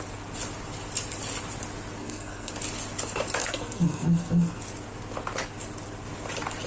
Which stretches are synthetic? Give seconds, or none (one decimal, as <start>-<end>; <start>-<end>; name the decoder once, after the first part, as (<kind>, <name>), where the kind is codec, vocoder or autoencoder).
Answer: 2.0-2.5 (codec, SNAC); 3.4-4.6